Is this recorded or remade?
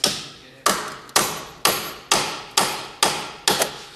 recorded